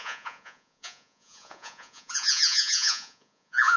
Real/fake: fake